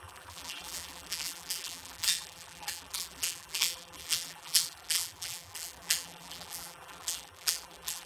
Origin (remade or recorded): remade